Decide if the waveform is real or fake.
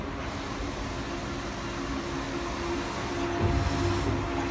real